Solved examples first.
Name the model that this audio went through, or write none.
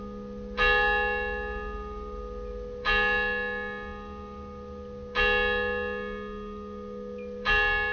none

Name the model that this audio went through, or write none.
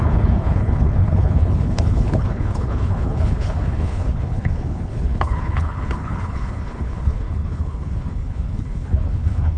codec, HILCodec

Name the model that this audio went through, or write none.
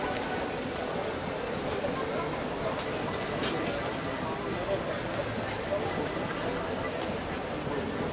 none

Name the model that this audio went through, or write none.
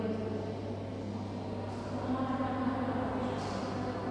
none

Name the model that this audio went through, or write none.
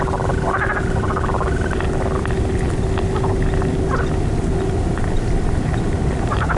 none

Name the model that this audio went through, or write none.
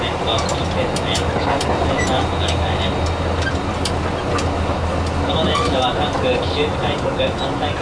none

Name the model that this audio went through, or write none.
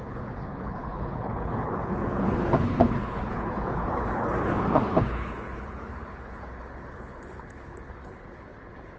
codec, HILCodec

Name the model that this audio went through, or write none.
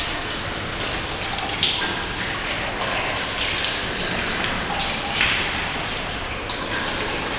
none